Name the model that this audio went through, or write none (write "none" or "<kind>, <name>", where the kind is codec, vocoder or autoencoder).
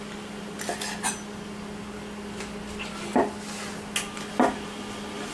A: none